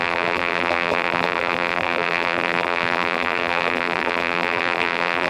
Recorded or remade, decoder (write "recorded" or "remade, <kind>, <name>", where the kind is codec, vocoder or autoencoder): remade, vocoder, BigVGAN v2